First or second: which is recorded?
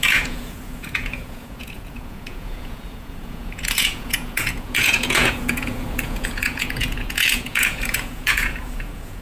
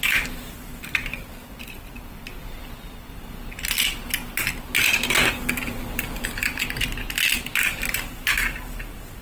second